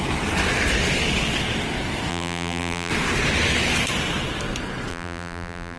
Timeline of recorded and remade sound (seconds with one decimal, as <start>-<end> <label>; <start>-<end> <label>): 0.0-2.1 recorded; 2.1-2.9 remade; 2.9-4.9 recorded; 4.9-5.8 remade